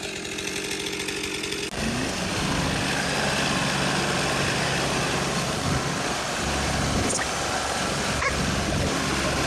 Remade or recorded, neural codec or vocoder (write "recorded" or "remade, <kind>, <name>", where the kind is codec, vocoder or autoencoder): recorded